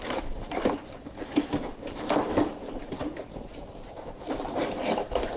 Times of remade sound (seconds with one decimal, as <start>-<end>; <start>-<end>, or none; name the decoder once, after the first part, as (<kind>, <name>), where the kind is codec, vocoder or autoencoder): 0.0-3.0 (vocoder, BigVGAN v2); 3.6-5.4